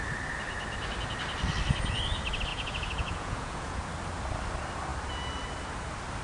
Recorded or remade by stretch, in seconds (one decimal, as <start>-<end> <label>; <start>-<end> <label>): 0.0-2.5 recorded; 2.5-3.8 remade; 3.8-6.2 recorded